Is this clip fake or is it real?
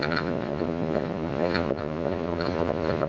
fake